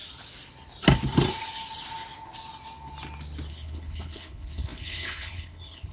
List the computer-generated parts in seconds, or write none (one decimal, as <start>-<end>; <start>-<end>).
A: 3.5-5.9